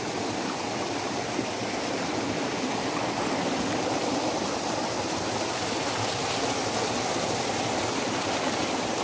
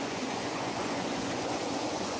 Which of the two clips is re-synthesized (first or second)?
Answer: second